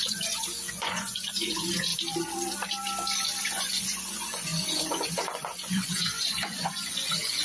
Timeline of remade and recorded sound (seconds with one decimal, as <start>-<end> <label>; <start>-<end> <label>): 0.0-1.9 remade; 1.9-3.4 recorded; 3.4-7.4 remade

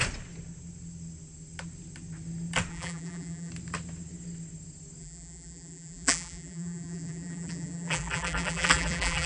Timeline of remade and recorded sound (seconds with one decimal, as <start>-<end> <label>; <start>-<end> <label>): 0.0-2.7 recorded; 2.7-3.5 remade; 3.5-5.0 recorded; 5.0-9.3 remade